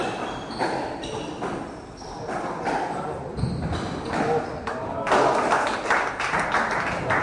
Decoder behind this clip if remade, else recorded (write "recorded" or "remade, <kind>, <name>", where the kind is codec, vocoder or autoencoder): recorded